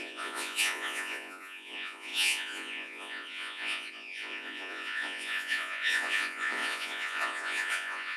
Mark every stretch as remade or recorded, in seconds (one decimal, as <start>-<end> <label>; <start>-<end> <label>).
0.0-8.2 remade